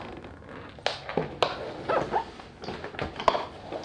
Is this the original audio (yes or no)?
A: yes